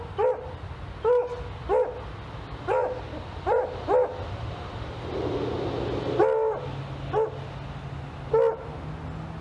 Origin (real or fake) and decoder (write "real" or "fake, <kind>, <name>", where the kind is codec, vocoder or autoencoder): real